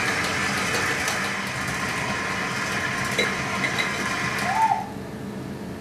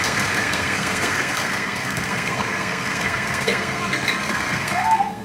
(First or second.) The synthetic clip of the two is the second